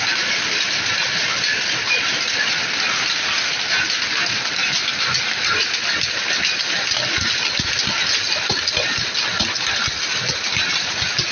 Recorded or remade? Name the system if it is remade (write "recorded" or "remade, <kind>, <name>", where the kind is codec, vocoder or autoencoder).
recorded